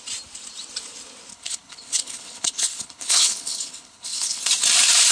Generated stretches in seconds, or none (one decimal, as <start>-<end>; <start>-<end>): 1.3-4.4